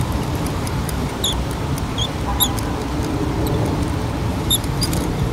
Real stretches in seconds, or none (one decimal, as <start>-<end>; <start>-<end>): 1.1-4.3

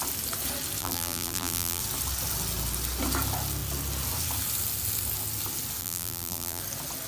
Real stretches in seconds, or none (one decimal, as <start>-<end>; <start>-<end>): 0.0-0.8; 1.8-5.8; 6.6-7.1

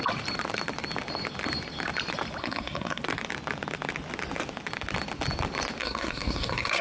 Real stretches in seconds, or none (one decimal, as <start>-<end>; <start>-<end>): 0.0-2.4; 3.0-5.8

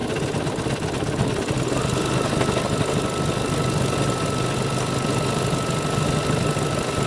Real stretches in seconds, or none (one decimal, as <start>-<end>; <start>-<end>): 0.0-7.1

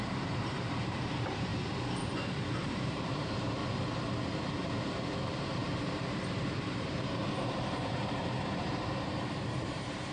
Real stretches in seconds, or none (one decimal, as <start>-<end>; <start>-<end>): 1.5-2.5; 3.6-4.4

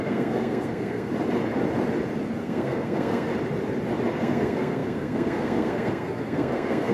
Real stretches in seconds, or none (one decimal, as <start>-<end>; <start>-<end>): 1.1-2.4; 3.3-4.1

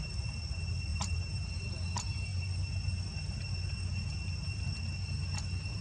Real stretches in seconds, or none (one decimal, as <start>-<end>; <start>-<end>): 0.0-0.9; 1.5-5.8

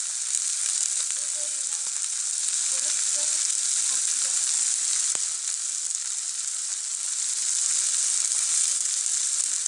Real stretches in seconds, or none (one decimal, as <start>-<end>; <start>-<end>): 0.0-9.7